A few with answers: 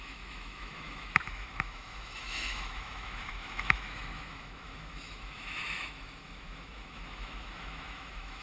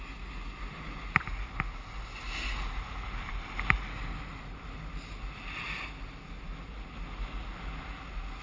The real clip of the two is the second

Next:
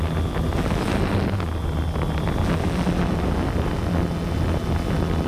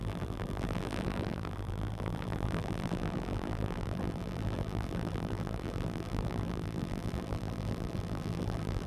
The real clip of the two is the first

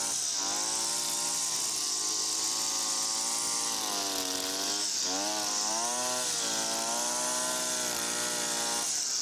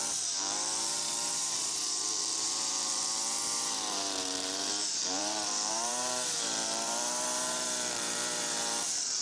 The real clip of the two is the first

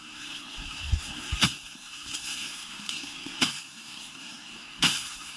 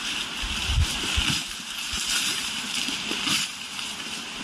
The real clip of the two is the second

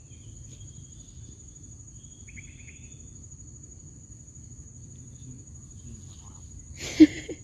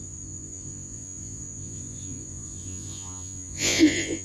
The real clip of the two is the first